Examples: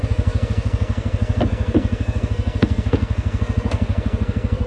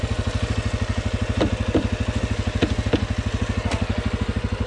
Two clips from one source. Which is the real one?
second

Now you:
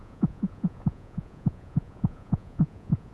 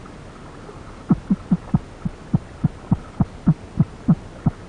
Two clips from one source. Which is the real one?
second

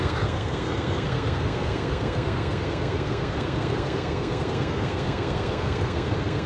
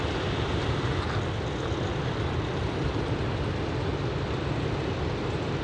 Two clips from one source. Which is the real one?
second